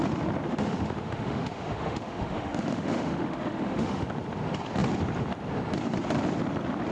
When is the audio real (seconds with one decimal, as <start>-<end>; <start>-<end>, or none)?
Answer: 0.0-0.5; 4.1-6.9